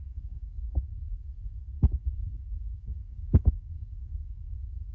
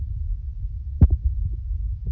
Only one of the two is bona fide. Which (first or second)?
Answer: second